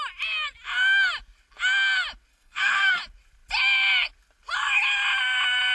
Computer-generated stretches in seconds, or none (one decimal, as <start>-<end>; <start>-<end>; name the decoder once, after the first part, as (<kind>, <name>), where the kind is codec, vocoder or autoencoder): 2.3-3.0 (codec, SNAC)